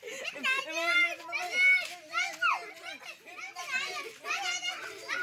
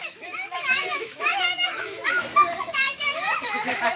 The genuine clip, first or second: first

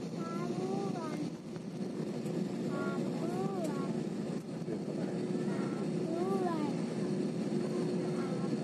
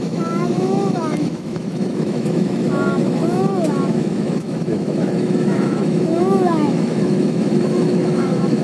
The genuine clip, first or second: first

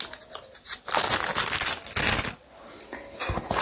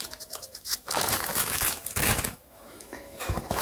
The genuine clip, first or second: first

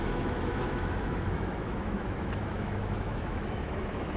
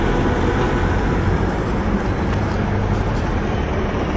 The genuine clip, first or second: second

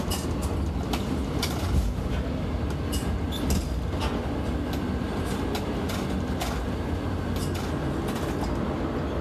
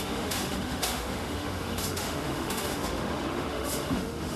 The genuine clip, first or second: first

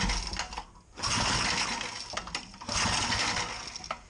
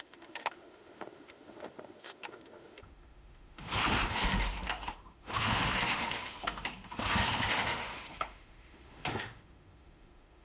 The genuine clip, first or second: first